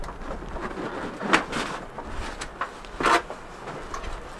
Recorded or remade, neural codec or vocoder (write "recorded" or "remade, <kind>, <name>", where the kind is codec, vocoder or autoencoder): recorded